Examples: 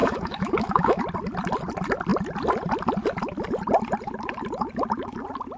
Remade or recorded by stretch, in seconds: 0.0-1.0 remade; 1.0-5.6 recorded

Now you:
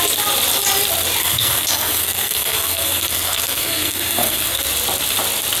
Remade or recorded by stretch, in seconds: 0.0-1.2 recorded; 1.2-4.6 remade; 4.6-5.6 recorded

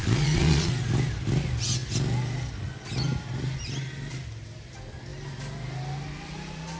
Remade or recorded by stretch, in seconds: 0.0-0.7 remade; 0.7-6.8 recorded

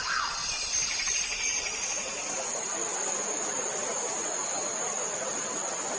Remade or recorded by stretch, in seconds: 0.0-6.0 recorded

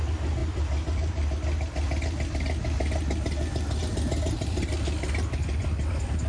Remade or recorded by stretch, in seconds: 0.0-6.3 recorded

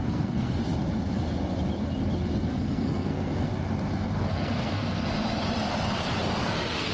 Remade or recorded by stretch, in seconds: 0.0-0.6 remade; 0.6-2.5 recorded; 2.5-3.5 remade; 3.5-4.2 recorded; 4.2-4.8 remade; 4.8-6.4 recorded; 6.4-6.9 remade